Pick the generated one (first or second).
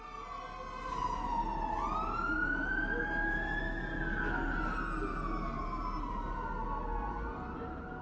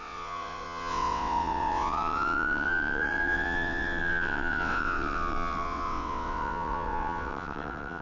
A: second